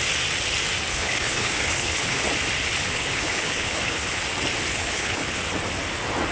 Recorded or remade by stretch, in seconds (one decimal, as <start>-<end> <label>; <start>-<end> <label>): 0.0-0.9 recorded; 0.9-2.2 remade; 2.2-2.8 recorded; 2.8-4.2 remade; 4.2-4.7 recorded; 4.7-5.4 remade; 5.4-6.3 recorded